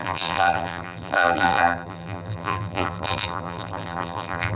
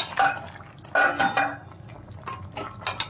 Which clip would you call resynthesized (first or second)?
first